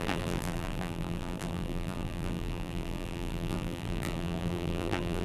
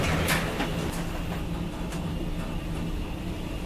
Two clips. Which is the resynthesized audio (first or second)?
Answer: first